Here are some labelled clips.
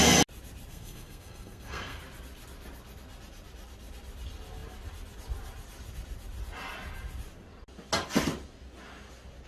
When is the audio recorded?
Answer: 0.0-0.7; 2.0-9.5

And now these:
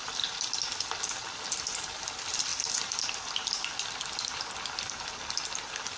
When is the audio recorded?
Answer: 0.0-6.0